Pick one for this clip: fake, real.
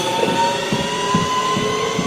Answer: real